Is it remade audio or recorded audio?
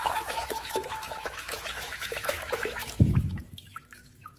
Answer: remade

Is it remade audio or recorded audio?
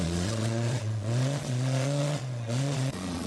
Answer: remade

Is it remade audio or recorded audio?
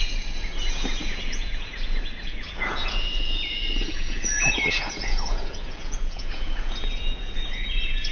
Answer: remade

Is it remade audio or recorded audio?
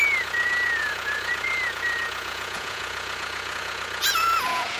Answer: remade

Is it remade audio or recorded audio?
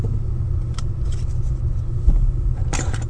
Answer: remade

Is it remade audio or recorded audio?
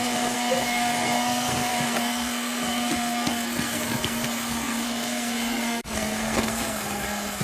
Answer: remade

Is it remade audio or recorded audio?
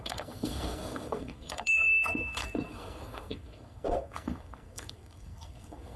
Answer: remade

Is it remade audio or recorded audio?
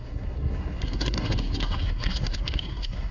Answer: remade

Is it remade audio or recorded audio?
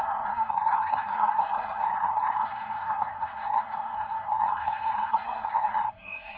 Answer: remade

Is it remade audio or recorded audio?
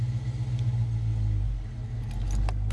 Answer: recorded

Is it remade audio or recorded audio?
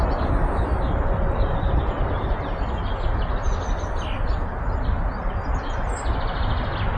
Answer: recorded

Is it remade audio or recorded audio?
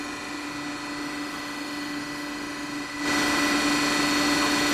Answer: recorded